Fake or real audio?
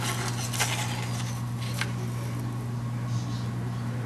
real